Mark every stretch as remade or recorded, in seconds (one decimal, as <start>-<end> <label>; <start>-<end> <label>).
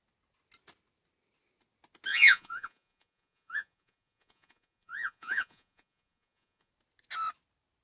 0.0-2.1 recorded; 2.1-6.7 remade; 6.7-7.8 recorded